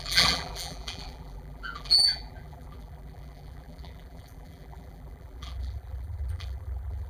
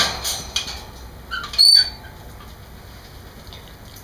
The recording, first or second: second